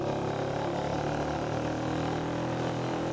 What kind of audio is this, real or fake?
real